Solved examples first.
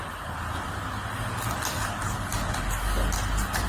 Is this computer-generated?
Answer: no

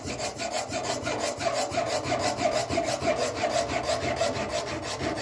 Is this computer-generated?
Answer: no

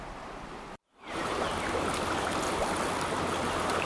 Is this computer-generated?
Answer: no